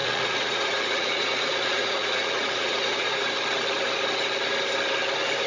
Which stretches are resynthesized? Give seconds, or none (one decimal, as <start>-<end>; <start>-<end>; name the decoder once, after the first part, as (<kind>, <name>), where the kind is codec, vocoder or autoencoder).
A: 0.0-3.3 (vocoder, Vocos)